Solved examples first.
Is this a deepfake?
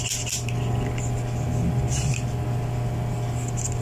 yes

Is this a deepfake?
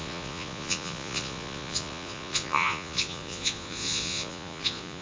yes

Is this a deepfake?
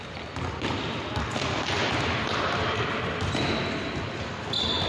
no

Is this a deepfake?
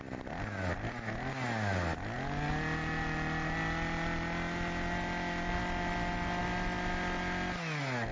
no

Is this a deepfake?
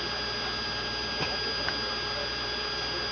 no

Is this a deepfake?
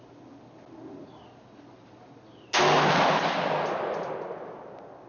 no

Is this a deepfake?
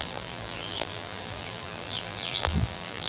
yes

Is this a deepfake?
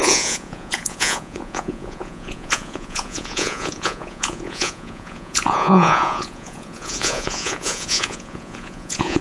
yes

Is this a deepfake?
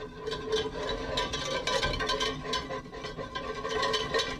no